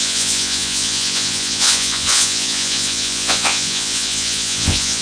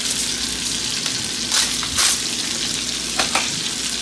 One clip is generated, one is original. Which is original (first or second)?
second